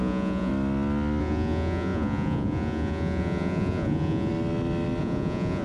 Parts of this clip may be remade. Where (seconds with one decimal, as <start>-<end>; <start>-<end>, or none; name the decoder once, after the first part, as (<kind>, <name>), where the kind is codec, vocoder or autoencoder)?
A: 0.0-0.5 (vocoder, Vocos); 1.2-4.3; 5.0-5.6